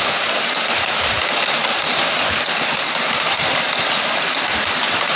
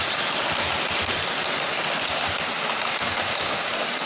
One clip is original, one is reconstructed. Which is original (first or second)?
second